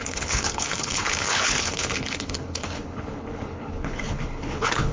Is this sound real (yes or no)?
no